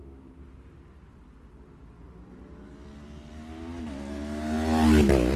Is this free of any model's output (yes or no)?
yes